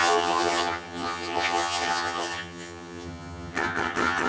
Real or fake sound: fake